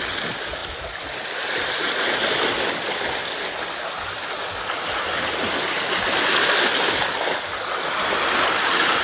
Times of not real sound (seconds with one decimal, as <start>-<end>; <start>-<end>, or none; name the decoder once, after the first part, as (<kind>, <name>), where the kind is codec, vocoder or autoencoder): 0.6-4.4 (vocoder, BigVGAN v2)